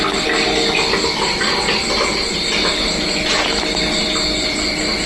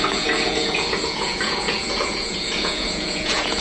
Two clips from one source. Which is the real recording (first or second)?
first